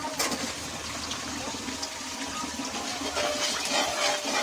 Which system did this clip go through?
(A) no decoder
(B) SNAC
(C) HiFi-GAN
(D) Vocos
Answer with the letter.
A